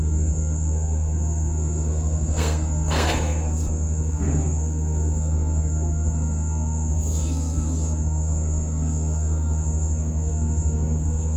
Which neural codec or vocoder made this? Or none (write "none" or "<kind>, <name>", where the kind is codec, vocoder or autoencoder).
codec, SNAC